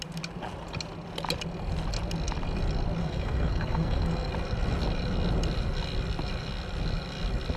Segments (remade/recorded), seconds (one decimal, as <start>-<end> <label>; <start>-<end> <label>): 0.0-3.0 recorded; 3.0-4.3 remade; 4.3-7.6 recorded